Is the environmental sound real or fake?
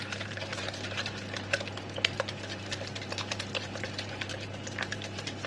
fake